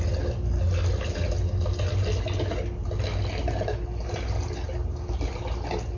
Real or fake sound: real